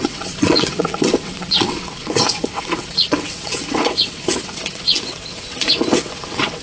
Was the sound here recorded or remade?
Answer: remade